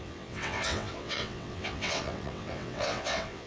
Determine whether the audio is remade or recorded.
remade